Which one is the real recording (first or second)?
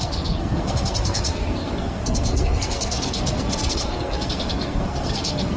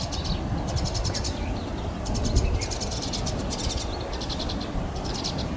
second